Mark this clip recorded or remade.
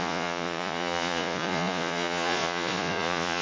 remade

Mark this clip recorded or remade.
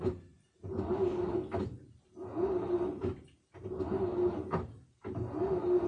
recorded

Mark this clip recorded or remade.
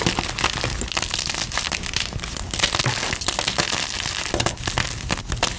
recorded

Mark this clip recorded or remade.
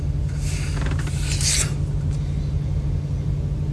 recorded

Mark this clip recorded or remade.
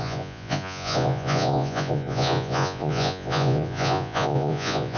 remade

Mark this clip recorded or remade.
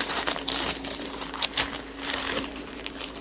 remade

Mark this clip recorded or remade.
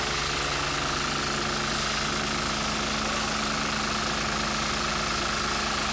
recorded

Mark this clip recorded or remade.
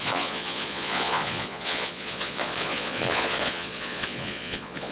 remade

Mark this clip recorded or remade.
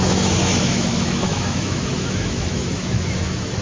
remade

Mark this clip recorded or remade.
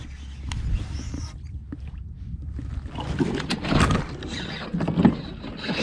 recorded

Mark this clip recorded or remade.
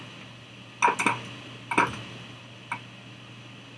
recorded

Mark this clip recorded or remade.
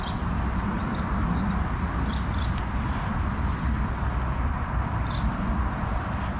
recorded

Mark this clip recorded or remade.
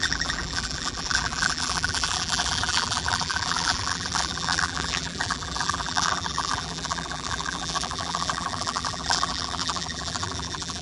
remade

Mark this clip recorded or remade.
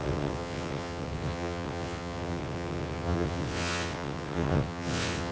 remade